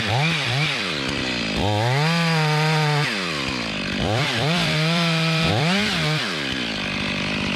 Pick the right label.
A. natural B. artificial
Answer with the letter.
B